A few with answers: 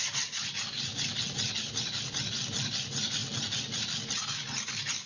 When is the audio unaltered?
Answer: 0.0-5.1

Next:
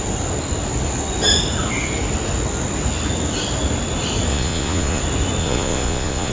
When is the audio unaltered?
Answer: 0.0-4.3; 5.0-5.4